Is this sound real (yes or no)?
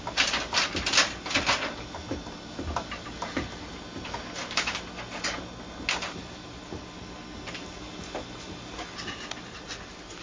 yes